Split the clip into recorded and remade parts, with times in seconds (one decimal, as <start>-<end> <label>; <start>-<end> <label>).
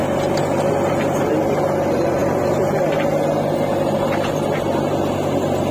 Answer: 0.0-5.7 recorded